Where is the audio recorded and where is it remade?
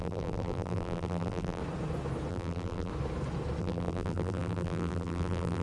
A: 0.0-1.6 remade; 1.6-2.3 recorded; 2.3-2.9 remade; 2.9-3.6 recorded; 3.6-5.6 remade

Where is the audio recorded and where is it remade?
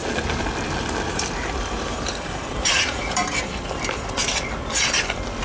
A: 0.0-1.1 recorded; 1.1-4.3 remade; 4.3-5.4 recorded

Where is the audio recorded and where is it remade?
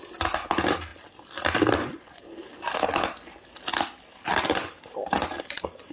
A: 0.0-5.9 recorded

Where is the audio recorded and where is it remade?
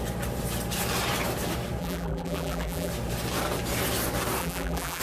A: 0.0-1.8 recorded; 1.8-2.9 remade; 2.9-4.4 recorded; 4.4-5.0 remade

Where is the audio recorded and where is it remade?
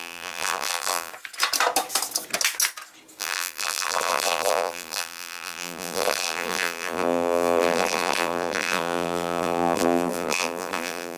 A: 0.0-1.1 remade; 1.1-3.2 recorded; 3.2-11.2 remade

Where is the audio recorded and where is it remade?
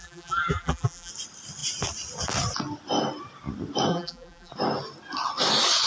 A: 0.0-1.1 remade; 1.1-3.9 recorded; 3.9-4.5 remade; 4.5-5.9 recorded